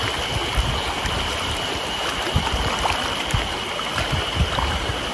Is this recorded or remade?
recorded